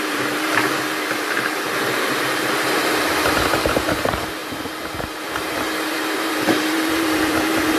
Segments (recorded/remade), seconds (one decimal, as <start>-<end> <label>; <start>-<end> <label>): 0.0-4.4 remade; 4.4-5.2 recorded; 5.2-7.8 remade